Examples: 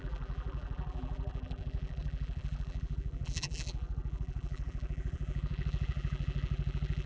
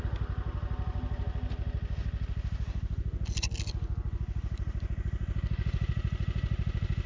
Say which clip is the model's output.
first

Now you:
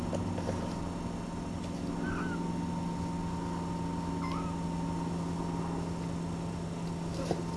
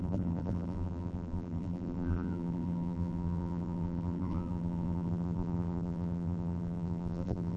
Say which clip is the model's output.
second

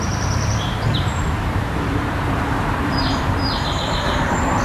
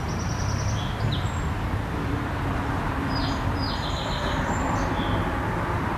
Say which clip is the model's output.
first